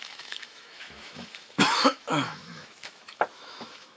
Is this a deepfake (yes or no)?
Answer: yes